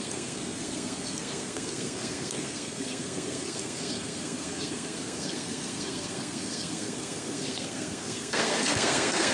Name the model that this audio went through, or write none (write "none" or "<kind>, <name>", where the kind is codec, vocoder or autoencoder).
codec, SNAC